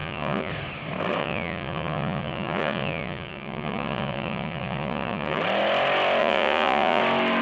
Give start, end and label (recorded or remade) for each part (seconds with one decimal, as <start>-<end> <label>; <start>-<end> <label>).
0.0-0.5 remade; 0.5-1.2 recorded; 1.2-5.4 remade; 5.4-6.2 recorded; 6.2-7.0 remade; 7.0-7.4 recorded